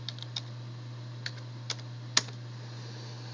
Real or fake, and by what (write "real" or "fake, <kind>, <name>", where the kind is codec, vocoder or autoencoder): real